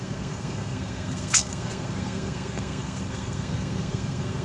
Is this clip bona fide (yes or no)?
no